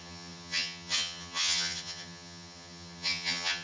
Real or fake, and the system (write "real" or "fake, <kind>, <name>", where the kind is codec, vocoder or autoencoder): fake, vocoder, HiFi-GAN